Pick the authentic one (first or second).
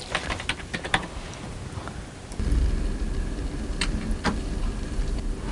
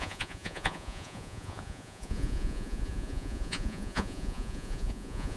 first